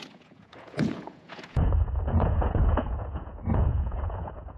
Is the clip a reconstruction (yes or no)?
yes